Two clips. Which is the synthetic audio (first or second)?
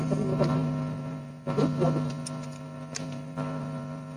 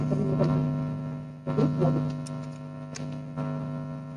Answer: first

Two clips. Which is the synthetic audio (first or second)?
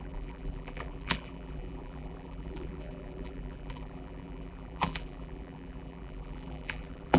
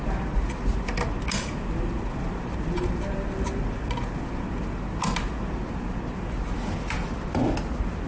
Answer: first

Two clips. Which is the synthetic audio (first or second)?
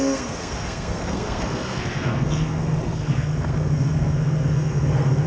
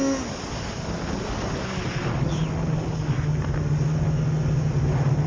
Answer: first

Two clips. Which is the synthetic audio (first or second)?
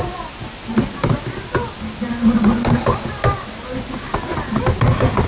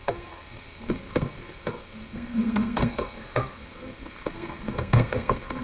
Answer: second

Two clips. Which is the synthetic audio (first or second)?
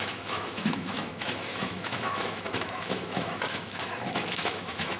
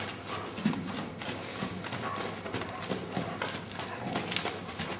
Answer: first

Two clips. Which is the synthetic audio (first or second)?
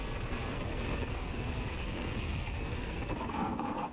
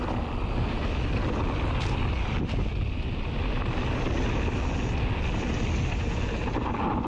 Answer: first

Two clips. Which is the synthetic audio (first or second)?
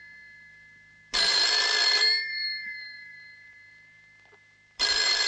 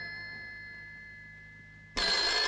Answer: first